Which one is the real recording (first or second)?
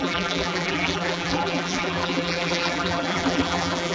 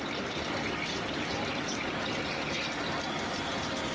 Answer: second